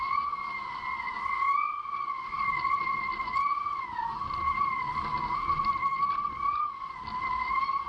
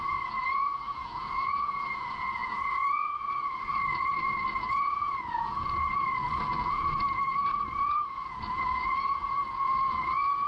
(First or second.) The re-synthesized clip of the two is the second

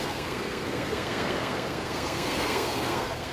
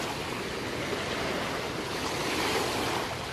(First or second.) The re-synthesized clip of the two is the first